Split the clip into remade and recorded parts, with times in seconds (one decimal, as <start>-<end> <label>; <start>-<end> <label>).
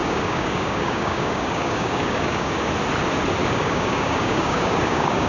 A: 0.0-2.7 remade; 2.7-3.4 recorded; 3.4-5.3 remade